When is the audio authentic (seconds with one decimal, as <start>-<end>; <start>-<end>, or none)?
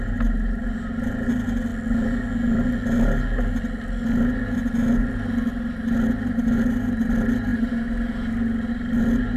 0.0-9.4